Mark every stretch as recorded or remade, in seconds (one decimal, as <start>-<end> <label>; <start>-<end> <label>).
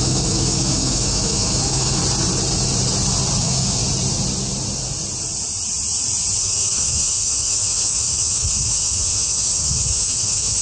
0.0-2.0 remade; 2.0-3.4 recorded; 3.4-3.8 remade; 3.8-6.4 recorded; 6.4-10.6 remade